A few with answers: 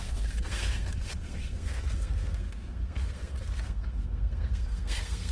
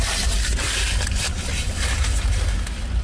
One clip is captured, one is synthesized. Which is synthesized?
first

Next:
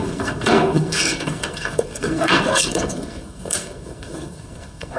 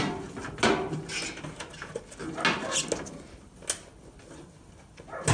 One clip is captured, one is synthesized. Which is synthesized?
first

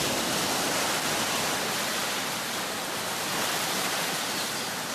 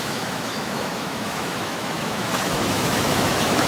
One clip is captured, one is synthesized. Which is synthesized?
second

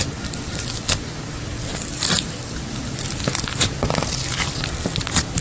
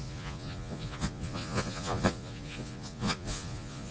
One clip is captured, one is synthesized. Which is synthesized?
second